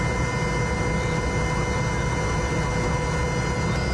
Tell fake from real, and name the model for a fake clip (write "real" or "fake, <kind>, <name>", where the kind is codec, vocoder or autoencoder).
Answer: real